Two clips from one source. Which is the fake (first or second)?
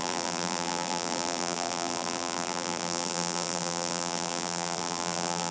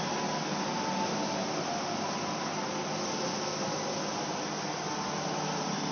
first